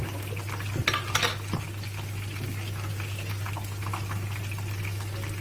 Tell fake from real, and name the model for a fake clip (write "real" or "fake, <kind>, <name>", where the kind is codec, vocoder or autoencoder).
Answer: real